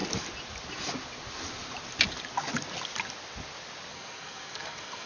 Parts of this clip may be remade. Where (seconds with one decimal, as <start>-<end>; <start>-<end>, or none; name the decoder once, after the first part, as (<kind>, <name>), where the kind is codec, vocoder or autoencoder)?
3.9-5.1 (codec, SNAC)